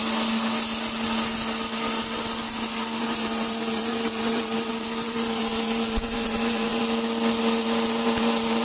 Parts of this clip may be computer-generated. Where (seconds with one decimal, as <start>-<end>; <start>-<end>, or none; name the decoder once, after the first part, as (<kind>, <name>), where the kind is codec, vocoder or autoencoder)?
3.0-6.8 (vocoder, BigVGAN v2); 7.6-8.6